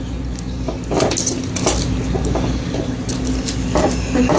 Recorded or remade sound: recorded